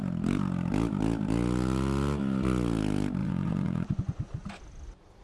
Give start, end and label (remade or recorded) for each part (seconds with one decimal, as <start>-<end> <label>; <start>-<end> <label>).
0.0-3.2 recorded; 3.2-4.6 remade; 4.6-5.2 recorded